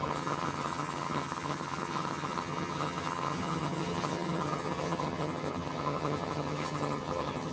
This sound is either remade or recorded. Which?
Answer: remade